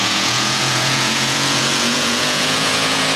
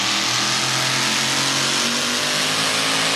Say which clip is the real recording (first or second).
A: second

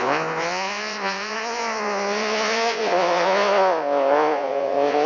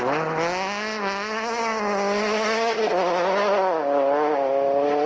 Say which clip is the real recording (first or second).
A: second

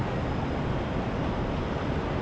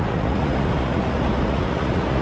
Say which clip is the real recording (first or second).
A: first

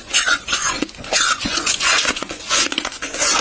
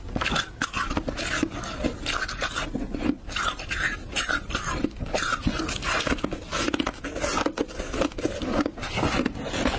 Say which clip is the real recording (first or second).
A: second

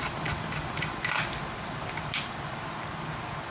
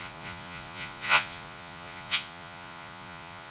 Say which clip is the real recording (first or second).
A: first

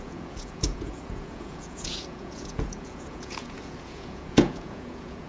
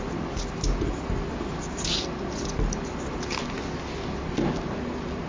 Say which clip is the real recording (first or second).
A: second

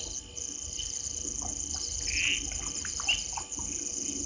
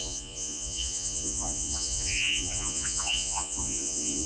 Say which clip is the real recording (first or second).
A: first